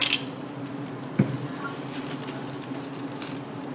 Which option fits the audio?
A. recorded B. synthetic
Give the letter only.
A